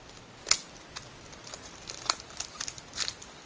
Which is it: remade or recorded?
recorded